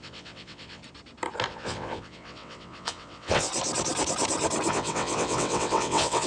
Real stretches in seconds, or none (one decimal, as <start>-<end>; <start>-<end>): 0.8-1.5; 3.5-4.7